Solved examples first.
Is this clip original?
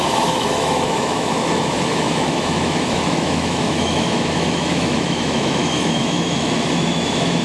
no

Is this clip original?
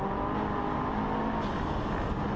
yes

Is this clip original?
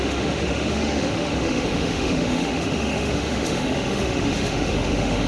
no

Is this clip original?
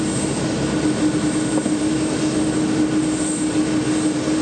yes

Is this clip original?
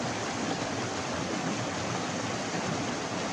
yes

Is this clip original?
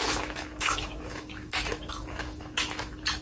no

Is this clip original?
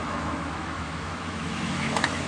no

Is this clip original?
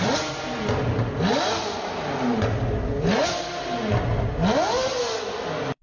yes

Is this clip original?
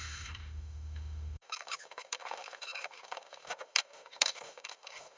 no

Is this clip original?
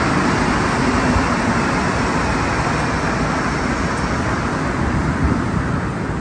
yes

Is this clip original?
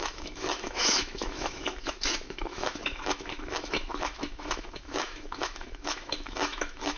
no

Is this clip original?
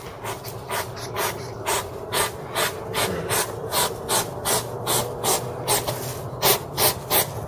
yes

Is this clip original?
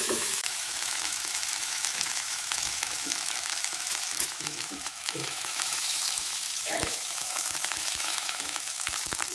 no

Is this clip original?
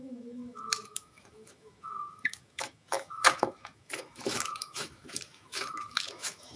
no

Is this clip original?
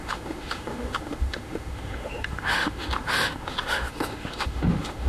no